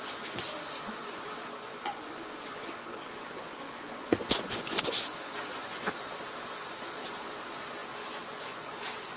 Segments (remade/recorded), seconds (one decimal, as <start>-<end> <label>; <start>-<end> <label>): 0.0-9.2 remade